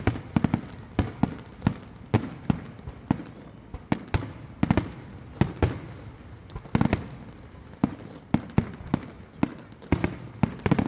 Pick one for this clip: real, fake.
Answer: real